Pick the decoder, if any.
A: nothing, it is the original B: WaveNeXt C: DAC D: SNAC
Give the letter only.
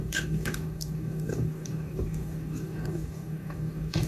C